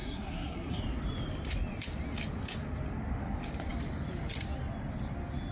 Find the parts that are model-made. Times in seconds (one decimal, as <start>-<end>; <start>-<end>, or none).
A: 0.0-0.8